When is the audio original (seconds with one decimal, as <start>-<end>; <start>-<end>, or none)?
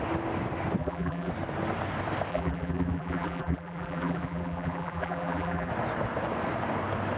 0.0-0.8; 1.3-2.3; 5.7-7.2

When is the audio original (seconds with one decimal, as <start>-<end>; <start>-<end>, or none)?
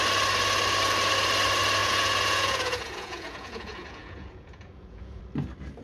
0.0-1.8; 5.2-5.8